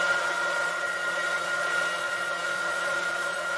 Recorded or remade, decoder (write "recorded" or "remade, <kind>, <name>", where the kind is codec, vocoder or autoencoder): remade, vocoder, Vocos